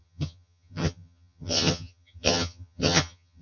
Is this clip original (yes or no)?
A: no